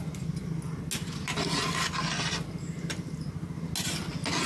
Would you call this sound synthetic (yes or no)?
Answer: no